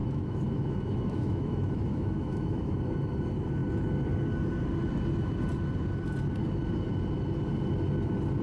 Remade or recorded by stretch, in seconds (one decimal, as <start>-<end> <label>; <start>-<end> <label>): 0.0-2.8 remade; 2.8-8.4 recorded

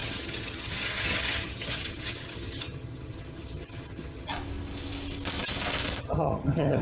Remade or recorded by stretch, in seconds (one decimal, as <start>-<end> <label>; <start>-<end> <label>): 0.0-4.3 remade; 4.3-6.0 recorded; 6.0-6.8 remade

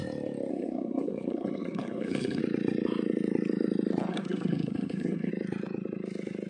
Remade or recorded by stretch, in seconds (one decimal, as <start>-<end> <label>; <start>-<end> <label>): 0.0-0.5 recorded; 0.5-2.4 remade; 2.4-4.1 recorded; 4.1-5.3 remade; 5.3-6.5 recorded

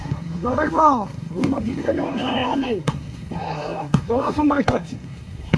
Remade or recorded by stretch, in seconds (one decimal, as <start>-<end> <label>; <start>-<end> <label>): 0.0-5.6 remade

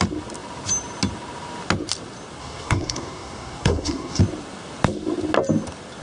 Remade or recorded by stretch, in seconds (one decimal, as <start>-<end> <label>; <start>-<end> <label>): 0.0-2.4 recorded; 2.4-4.2 remade; 4.2-6.0 recorded

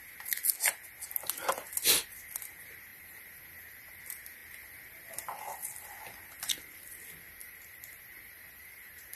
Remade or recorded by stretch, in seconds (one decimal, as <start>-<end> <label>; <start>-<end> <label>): 0.0-2.9 recorded; 2.9-3.4 remade; 3.4-7.4 recorded; 7.4-9.2 remade